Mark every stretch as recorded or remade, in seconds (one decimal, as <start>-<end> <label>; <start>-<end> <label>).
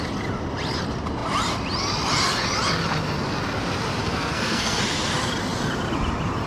0.0-4.0 recorded; 4.0-4.8 remade; 4.8-6.5 recorded